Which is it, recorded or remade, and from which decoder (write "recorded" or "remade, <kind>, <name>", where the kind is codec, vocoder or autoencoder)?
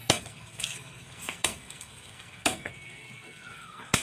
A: remade, codec, SNAC